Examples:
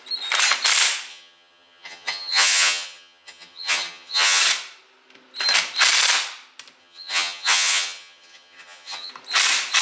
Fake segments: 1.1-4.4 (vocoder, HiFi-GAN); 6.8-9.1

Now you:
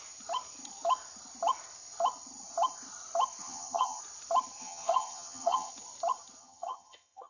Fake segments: 3.4-4.0 (vocoder, HiFi-GAN); 4.6-5.7; 6.4-7.3

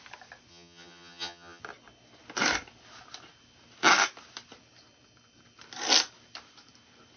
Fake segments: 0.5-1.6 (vocoder, HiFi-GAN)